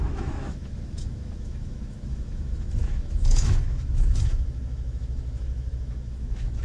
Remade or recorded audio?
remade